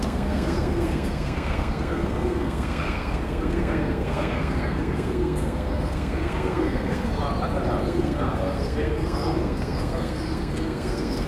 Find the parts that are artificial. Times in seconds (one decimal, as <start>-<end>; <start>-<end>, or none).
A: 0.0-7.2; 7.8-11.3